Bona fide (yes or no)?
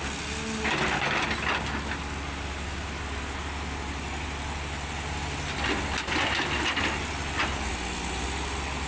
yes